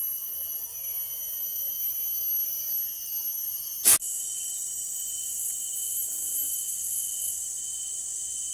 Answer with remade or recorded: recorded